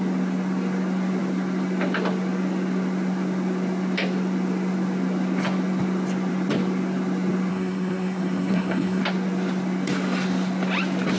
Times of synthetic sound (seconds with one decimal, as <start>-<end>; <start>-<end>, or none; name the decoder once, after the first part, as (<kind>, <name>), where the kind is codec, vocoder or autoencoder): 7.5-9.0 (codec, SNAC)